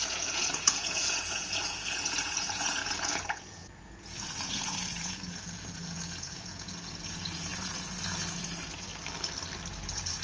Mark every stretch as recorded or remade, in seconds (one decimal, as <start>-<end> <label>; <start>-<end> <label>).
0.0-8.9 remade; 8.9-9.7 recorded; 9.7-10.2 remade

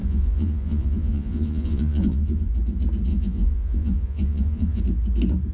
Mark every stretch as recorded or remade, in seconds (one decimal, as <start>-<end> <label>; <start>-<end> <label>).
0.0-2.5 remade; 2.5-3.1 recorded; 3.1-4.8 remade; 4.8-5.5 recorded

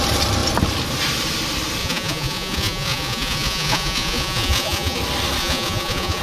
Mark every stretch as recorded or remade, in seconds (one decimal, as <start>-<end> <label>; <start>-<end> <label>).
0.0-1.8 recorded; 1.8-5.0 remade; 5.0-5.4 recorded; 5.4-6.2 remade

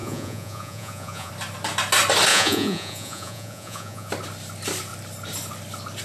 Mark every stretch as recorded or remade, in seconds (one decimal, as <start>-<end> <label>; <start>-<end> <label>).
0.0-1.3 remade; 1.3-2.3 recorded; 2.3-4.1 remade; 4.1-6.0 recorded

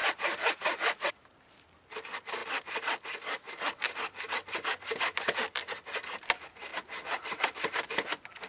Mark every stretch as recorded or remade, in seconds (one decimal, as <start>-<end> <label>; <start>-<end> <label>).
0.0-1.2 remade; 1.2-8.5 recorded

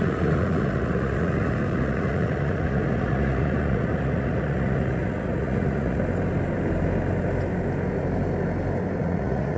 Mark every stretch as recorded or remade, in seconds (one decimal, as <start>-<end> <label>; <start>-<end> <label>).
0.0-6.0 remade; 6.0-9.0 recorded; 9.0-9.6 remade

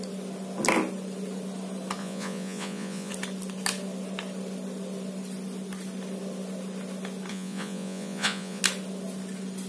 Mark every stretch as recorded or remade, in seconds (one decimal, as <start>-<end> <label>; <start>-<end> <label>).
0.0-2.0 recorded; 2.0-3.1 remade; 3.1-7.3 recorded; 7.3-8.6 remade; 8.6-9.7 recorded

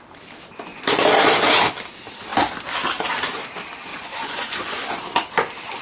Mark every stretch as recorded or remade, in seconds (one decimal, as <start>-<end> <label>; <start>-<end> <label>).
0.0-3.9 recorded; 3.9-4.9 remade; 4.9-5.8 recorded